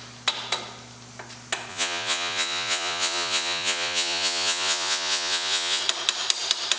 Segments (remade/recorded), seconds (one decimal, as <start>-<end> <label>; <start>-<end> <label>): 0.0-1.7 recorded; 1.7-5.8 remade; 5.8-6.8 recorded